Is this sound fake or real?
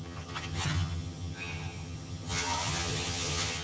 fake